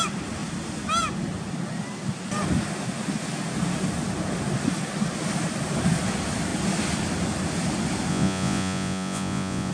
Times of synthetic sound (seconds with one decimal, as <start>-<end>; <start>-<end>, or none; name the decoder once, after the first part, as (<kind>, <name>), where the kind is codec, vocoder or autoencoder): 8.1-9.7 (vocoder, Vocos)